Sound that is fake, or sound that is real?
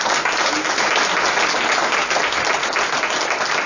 real